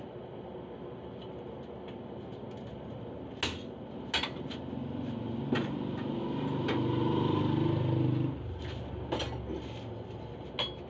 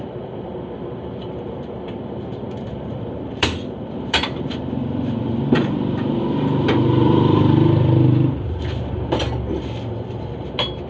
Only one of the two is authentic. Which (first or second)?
first